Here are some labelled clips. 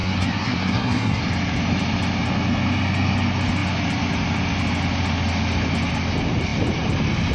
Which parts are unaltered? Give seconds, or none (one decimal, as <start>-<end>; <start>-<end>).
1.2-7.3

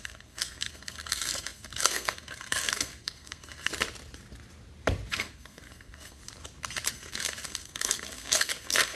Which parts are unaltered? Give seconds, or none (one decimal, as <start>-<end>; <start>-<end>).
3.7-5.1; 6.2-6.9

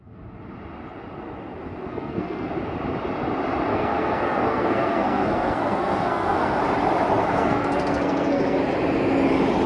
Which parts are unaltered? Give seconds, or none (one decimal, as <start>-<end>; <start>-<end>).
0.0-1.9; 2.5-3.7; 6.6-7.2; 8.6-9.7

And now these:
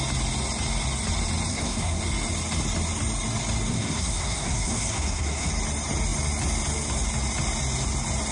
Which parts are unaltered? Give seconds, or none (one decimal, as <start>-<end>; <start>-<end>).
0.0-1.5; 2.0-3.7; 5.5-8.3

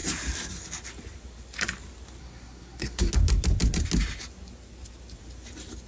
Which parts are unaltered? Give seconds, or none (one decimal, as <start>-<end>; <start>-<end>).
0.0-2.2; 3.1-5.9